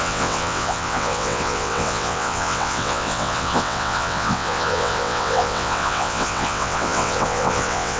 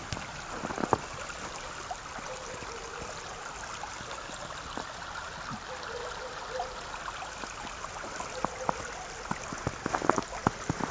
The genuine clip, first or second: second